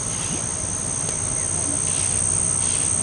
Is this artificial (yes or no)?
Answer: no